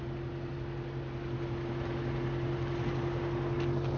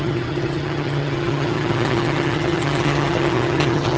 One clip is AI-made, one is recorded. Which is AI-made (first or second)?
second